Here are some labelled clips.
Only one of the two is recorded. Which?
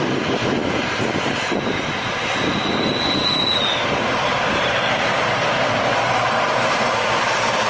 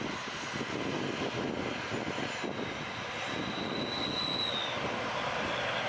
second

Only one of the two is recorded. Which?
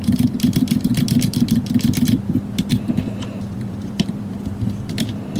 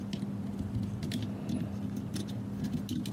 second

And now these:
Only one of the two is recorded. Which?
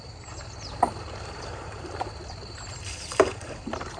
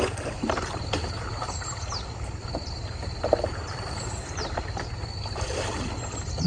first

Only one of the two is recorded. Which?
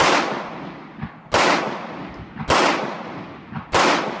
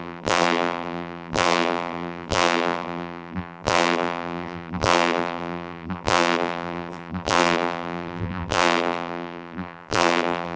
first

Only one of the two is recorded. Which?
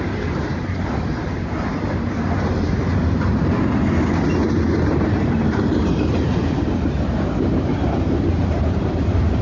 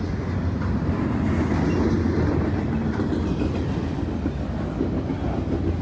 second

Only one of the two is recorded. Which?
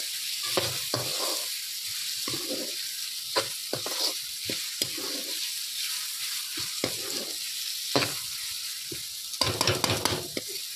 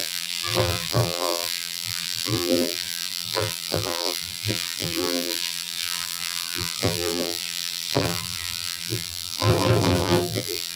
first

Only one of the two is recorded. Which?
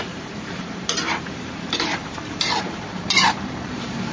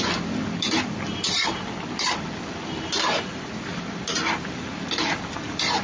second